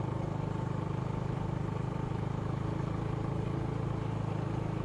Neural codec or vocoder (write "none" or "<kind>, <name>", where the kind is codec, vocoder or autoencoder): none